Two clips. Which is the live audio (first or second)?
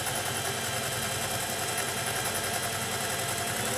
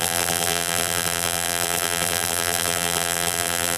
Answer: first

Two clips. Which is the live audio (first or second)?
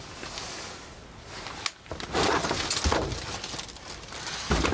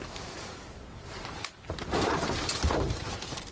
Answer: first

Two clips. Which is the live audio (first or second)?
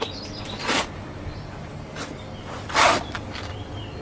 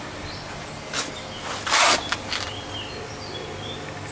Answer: second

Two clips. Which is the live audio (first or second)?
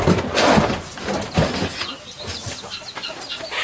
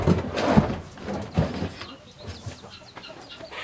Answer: second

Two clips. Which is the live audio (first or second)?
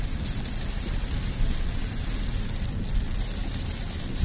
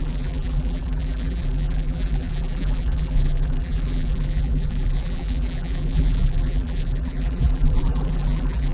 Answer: first